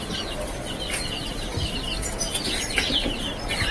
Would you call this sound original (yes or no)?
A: yes